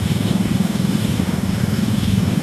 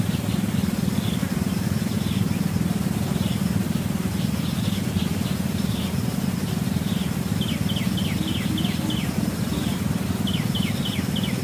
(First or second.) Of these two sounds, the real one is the second